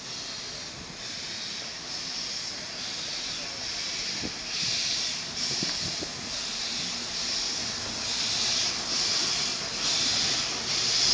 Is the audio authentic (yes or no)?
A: yes